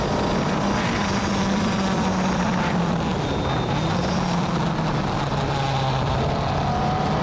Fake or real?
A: real